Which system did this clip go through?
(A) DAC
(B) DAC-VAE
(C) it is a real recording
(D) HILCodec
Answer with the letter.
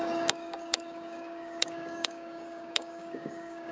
A